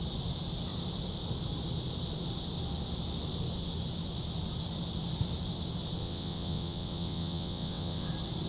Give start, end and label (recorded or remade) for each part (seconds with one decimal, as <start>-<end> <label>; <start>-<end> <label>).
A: 0.0-6.0 recorded; 6.0-8.1 remade; 8.1-8.5 recorded